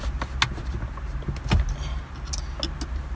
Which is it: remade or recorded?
recorded